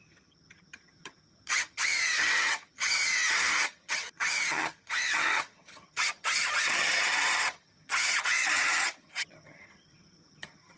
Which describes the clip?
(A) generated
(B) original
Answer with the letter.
A